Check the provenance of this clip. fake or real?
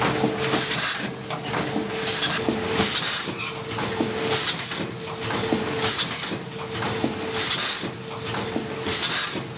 real